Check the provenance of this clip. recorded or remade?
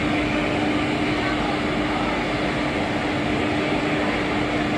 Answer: recorded